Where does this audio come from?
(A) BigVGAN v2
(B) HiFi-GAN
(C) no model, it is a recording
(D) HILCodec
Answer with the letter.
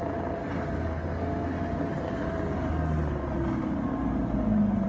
C